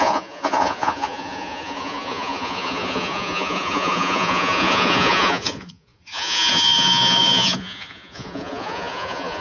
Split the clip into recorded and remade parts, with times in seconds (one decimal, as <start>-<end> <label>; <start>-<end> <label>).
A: 0.0-9.4 remade